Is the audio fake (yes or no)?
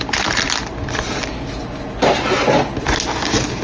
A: no